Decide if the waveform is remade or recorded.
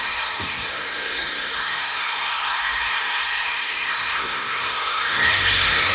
remade